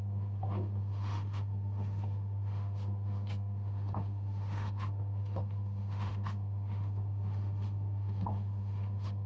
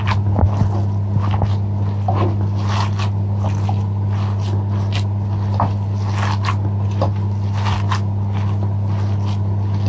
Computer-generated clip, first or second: first